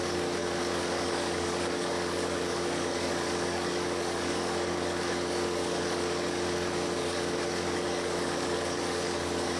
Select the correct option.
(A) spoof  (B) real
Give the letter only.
A